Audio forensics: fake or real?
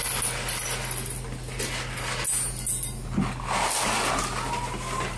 real